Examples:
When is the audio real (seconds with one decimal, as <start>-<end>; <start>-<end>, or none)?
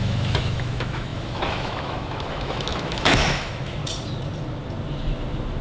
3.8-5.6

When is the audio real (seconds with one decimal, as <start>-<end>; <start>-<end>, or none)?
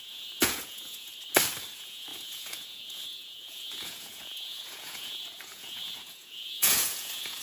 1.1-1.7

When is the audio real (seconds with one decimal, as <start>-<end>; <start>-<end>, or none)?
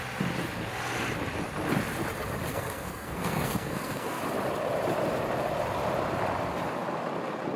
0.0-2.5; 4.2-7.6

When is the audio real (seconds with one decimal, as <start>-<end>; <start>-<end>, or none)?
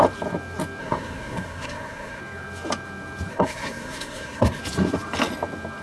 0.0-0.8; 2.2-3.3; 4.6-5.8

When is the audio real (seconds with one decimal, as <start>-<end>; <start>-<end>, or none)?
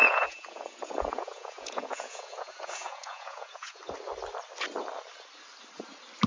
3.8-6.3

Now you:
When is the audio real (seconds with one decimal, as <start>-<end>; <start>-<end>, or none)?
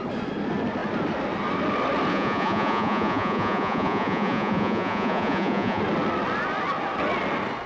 0.0-2.1; 5.8-7.7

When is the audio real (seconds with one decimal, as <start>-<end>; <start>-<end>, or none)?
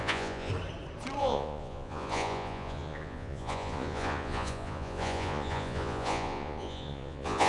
0.5-1.2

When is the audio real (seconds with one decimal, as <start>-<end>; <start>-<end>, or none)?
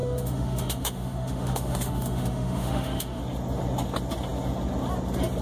3.2-5.4